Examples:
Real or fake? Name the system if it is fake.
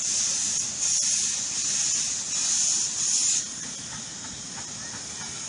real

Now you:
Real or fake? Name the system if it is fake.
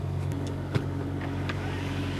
fake, codec, DAC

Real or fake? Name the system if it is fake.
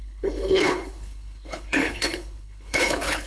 fake, codec, HILCodec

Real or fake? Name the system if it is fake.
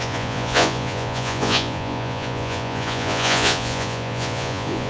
fake, vocoder, Vocos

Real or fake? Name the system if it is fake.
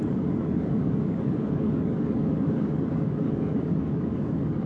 fake, codec, DAC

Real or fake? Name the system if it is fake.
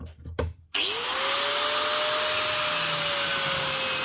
real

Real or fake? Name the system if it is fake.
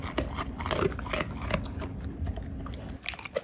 real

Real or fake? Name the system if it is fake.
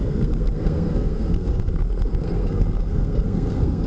fake, codec, SNAC